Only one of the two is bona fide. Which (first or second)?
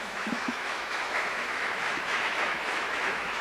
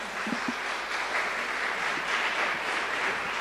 second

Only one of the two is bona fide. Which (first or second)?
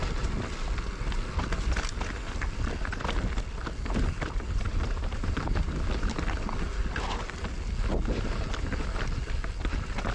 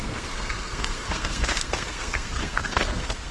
first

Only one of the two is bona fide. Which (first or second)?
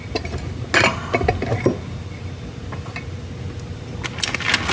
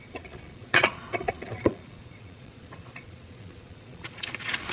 first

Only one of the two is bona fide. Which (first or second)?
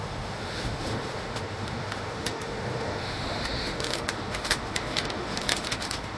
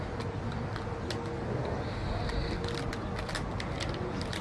second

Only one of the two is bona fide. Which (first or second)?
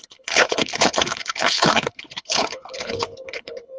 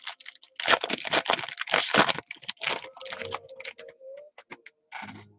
second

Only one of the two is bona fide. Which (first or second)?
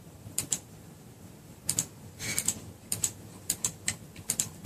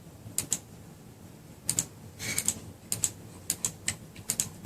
second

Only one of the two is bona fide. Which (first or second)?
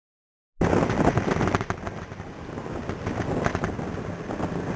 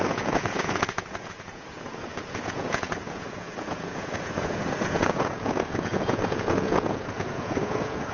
first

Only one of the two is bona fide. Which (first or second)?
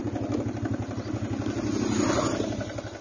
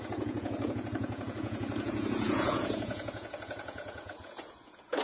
first